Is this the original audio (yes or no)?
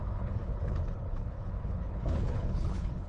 no